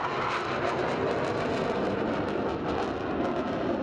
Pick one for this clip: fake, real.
real